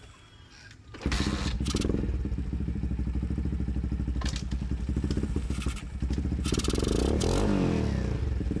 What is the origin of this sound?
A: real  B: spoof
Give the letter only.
A